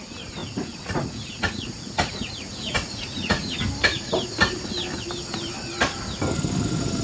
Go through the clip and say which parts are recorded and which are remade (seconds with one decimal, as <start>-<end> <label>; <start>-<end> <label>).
0.0-0.4 recorded; 0.4-3.7 remade; 3.7-7.0 recorded